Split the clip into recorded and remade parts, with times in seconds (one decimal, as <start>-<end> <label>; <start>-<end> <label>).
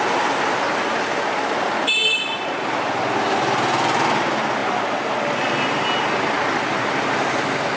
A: 0.0-7.8 recorded